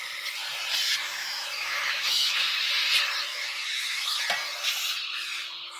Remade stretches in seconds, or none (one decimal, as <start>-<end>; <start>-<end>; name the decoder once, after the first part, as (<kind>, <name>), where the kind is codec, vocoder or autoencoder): 1.0-2.7 (autoencoder, DAC-VAE); 3.3-4.2